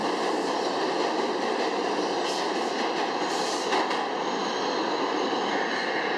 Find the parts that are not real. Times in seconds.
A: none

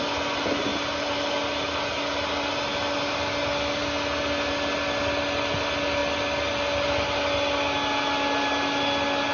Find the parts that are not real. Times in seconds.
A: none

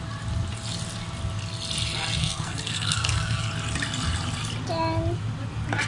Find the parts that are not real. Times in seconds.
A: 2.2-3.5 (codec, SNAC)

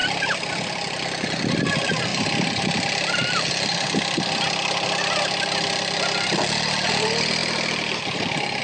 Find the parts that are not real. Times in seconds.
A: 0.0-0.5 (vocoder, BigVGAN v2); 2.1-6.9; 7.4-8.6

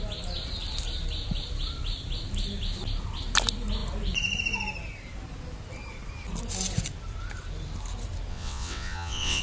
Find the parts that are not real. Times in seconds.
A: 8.3-9.4 (vocoder, WaveNeXt)

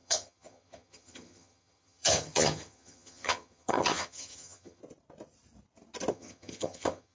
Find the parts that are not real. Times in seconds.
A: 0.0-4.8 (vocoder, HiFi-GAN); 6.1-7.1

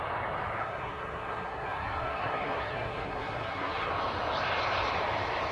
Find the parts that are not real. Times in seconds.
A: 0.6-3.9 (codec, SNAC)

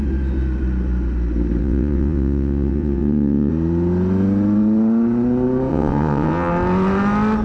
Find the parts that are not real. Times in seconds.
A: 1.6-3.5 (vocoder, WaveNeXt); 5.7-6.5